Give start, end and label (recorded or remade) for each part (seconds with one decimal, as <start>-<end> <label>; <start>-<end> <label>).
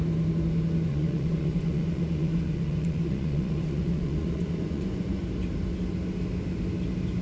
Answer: 0.0-0.9 recorded; 0.9-5.2 remade; 5.2-7.2 recorded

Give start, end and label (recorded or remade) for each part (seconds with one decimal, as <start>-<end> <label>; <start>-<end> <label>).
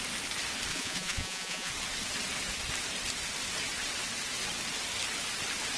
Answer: 0.0-0.7 recorded; 0.7-1.7 remade; 1.7-5.8 recorded